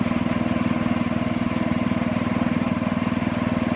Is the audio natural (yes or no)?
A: yes